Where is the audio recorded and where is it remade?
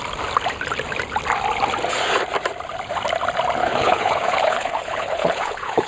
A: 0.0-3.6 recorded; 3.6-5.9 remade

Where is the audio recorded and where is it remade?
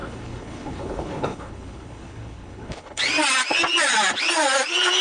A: 0.0-3.0 remade; 3.0-5.0 recorded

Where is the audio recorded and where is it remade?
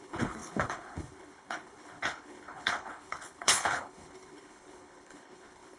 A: 0.0-5.8 remade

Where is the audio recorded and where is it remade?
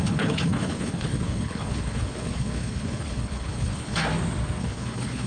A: 0.0-4.0 remade; 4.0-4.6 recorded; 4.6-5.3 remade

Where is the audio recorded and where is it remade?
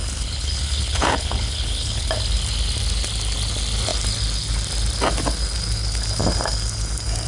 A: 0.0-2.1 remade; 2.1-7.3 recorded